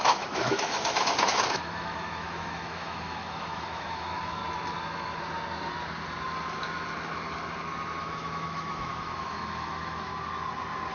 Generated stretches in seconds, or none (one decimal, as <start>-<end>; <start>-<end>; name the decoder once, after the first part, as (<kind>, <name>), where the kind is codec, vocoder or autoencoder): 0.0-4.4 (autoencoder, DAC-VAE); 8.0-10.1